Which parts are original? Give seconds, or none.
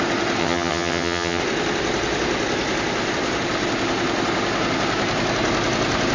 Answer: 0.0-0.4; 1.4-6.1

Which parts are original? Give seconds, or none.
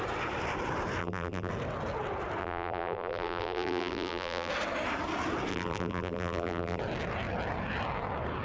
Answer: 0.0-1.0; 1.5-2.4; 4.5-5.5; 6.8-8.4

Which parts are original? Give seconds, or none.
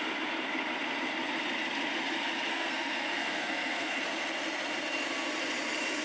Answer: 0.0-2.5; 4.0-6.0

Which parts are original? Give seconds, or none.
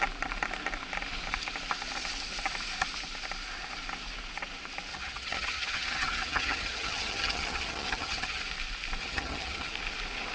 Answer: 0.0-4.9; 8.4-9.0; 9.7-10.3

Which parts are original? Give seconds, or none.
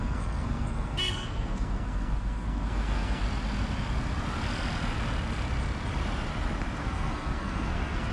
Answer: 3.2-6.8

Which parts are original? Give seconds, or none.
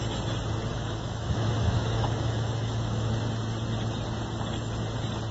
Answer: 0.0-0.7; 3.1-5.3